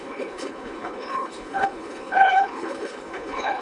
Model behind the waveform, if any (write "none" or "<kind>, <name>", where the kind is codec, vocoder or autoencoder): codec, HILCodec